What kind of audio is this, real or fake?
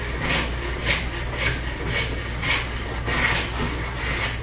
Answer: real